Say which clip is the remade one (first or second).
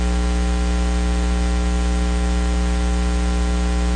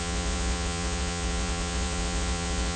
second